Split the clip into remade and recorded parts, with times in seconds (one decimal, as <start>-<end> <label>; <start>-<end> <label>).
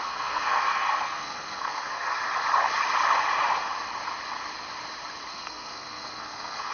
0.0-2.2 remade; 2.2-5.3 recorded; 5.3-6.7 remade